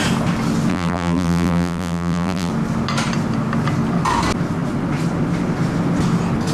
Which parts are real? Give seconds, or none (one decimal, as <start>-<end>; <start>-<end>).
0.0-0.7; 2.5-6.5